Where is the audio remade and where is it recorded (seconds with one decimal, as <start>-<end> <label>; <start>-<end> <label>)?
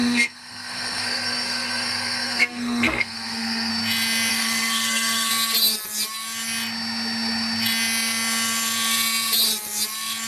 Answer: 0.0-3.7 remade; 3.7-4.3 recorded; 4.3-5.3 remade; 5.3-10.3 recorded